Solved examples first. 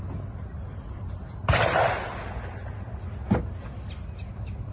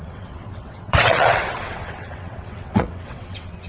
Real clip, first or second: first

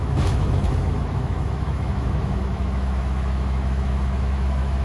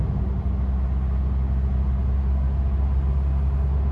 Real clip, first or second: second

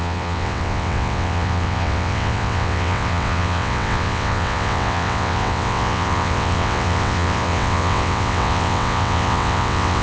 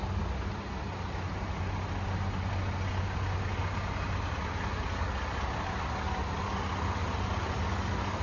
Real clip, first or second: second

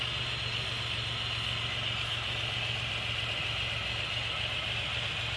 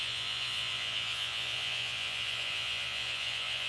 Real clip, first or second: first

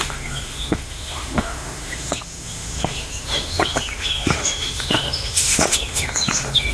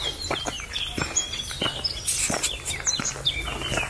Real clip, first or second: second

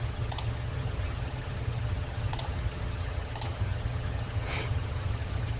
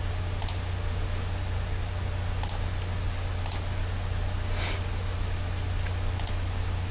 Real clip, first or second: second